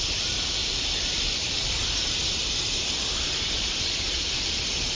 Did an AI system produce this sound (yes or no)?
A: yes